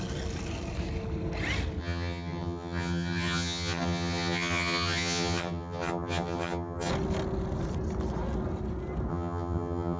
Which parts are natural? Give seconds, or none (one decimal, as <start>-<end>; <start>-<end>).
0.0-1.8; 6.9-9.1